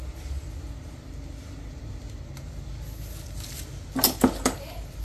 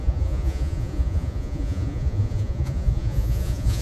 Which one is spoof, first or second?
second